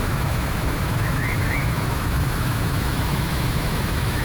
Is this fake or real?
fake